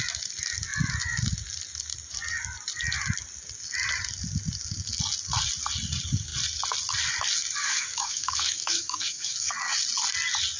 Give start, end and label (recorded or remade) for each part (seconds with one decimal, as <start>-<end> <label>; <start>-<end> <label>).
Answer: 0.0-7.6 recorded; 7.6-9.5 remade; 9.5-10.6 recorded